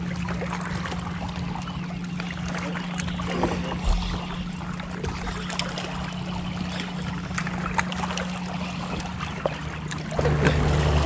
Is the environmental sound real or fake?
real